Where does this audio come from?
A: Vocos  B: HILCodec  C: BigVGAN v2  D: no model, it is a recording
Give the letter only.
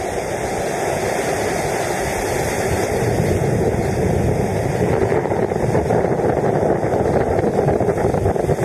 D